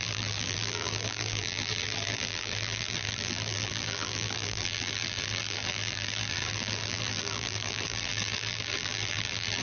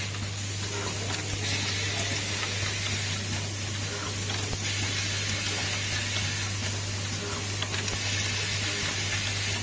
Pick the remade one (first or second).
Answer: first